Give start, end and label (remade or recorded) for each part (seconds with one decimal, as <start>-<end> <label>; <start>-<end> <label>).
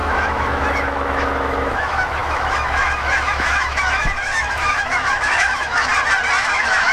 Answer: 0.0-5.9 remade; 5.9-6.4 recorded; 6.4-6.9 remade